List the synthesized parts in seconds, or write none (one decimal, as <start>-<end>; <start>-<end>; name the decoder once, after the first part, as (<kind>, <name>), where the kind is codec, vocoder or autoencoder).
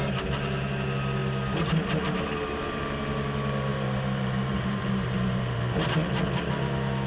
3.7-5.6 (vocoder, BigVGAN v2)